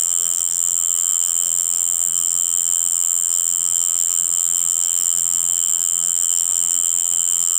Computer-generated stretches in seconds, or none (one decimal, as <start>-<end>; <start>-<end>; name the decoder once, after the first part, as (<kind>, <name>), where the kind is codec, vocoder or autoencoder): 0.0-7.6 (vocoder, BigVGAN v2)